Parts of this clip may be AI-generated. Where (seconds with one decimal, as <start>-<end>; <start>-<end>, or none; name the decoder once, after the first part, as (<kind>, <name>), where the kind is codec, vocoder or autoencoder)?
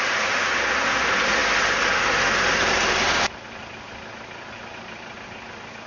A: none